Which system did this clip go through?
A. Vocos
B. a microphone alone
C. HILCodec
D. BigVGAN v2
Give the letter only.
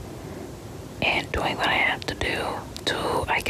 B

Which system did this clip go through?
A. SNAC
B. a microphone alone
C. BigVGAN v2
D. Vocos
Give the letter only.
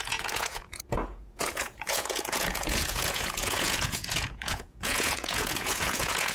D